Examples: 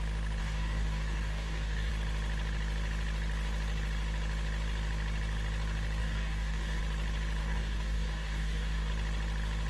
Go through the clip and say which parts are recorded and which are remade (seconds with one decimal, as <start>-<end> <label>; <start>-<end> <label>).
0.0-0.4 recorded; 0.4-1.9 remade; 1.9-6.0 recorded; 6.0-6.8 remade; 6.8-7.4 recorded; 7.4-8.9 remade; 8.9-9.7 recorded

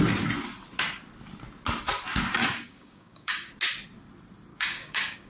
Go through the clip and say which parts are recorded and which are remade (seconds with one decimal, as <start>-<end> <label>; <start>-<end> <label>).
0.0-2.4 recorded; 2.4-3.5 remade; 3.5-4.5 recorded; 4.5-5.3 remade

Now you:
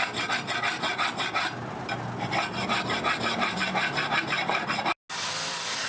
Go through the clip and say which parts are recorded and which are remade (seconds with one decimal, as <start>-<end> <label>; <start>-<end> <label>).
0.0-5.9 recorded

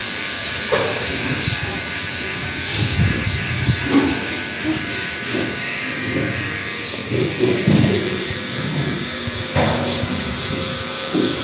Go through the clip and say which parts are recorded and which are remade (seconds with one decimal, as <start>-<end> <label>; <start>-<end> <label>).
0.0-11.4 remade

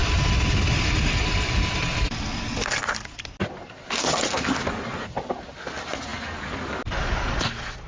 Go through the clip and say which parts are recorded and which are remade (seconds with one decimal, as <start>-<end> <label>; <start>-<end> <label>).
0.0-7.9 recorded

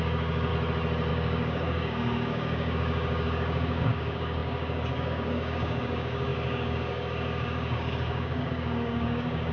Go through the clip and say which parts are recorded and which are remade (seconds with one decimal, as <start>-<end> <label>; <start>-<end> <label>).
0.0-0.5 remade; 0.5-1.1 recorded; 1.1-9.5 remade

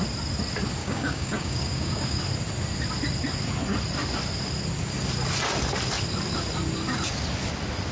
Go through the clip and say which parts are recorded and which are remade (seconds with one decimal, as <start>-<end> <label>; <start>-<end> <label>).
0.0-0.8 recorded; 0.8-2.2 remade; 2.2-7.9 recorded